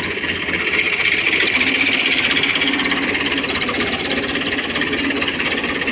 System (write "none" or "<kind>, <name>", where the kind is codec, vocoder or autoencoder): none